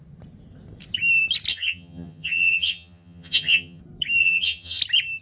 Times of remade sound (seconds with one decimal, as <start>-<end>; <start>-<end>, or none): 1.5-3.8; 4.2-4.8